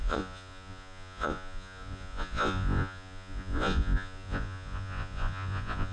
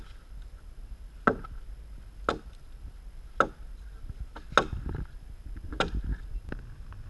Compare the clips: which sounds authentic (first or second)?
second